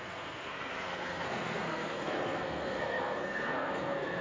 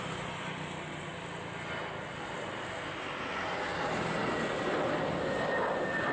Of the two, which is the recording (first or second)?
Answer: second